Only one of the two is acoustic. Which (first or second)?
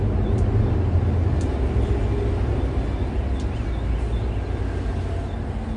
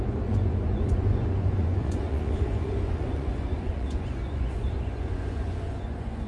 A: first